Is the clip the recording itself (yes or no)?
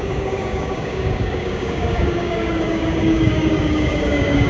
no